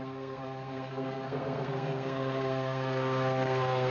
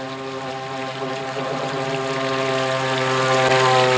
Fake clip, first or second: first